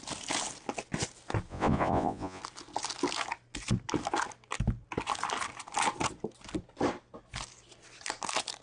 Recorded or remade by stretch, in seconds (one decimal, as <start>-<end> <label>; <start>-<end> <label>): 0.0-1.5 recorded; 1.5-2.4 remade; 2.4-8.6 recorded